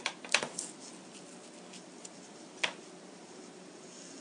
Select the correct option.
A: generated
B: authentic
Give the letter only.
B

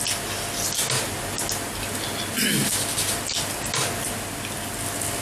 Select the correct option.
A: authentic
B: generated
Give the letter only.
A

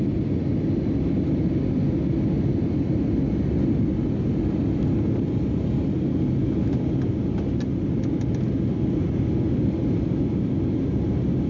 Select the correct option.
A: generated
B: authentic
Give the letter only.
B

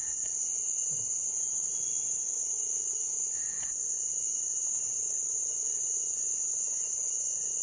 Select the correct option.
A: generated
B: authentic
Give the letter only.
B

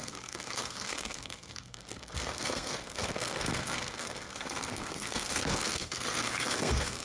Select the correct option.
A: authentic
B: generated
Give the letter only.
B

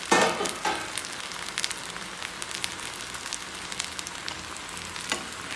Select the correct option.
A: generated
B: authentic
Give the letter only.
B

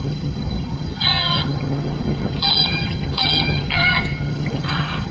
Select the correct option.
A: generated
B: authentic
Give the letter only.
A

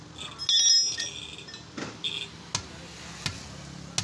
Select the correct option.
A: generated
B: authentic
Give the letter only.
B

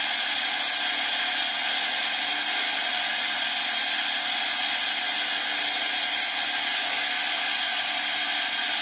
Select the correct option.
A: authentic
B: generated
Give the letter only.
A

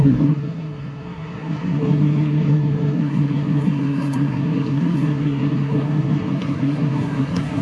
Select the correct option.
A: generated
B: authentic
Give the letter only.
A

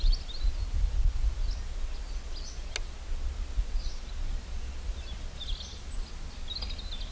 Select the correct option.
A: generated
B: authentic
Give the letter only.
B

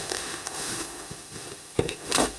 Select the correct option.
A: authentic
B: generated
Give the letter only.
B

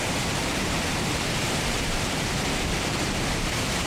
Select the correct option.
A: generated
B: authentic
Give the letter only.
A